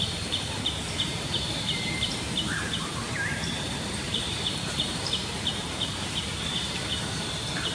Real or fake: fake